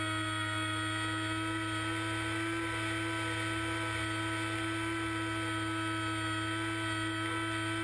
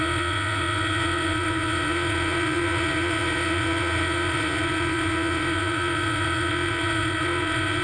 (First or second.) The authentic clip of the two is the first